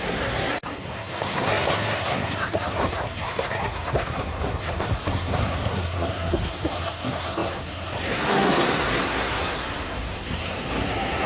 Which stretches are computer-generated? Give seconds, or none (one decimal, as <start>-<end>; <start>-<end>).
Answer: 0.0-11.3

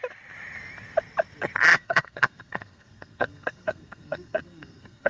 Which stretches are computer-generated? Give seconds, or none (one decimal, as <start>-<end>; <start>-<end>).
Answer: 1.7-5.1

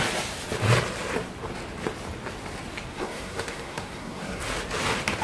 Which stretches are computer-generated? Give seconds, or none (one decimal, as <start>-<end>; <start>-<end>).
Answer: 2.9-4.4

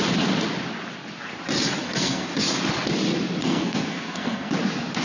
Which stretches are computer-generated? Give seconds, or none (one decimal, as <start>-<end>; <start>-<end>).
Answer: 1.8-2.3; 3.4-4.5